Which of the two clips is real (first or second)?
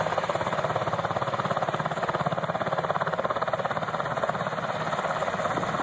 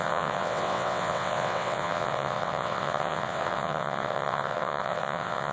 first